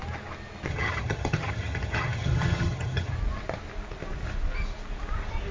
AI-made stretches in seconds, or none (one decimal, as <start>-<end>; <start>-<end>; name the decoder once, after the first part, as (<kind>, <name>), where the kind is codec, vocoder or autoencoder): 0.7-3.1 (vocoder, HiFi-GAN)